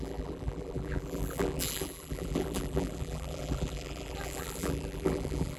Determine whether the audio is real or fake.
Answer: fake